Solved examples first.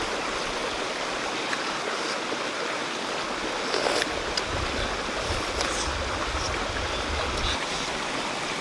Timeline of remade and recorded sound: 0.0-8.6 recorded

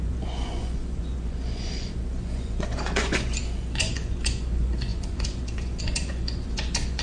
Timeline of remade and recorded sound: 0.0-7.0 remade

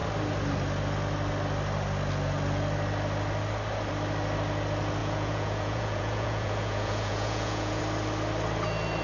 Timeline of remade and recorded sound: 0.0-5.0 recorded; 5.0-7.8 remade; 7.8-9.0 recorded

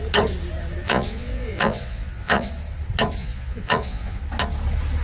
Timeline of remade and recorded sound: 0.0-0.8 recorded; 0.8-2.5 remade; 2.5-3.2 recorded; 3.2-4.2 remade; 4.2-5.0 recorded